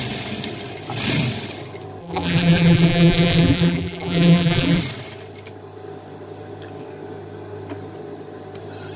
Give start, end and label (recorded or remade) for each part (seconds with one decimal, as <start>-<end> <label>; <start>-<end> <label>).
0.0-2.0 recorded; 2.0-4.8 remade; 4.8-9.0 recorded